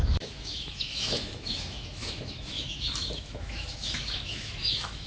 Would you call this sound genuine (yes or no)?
no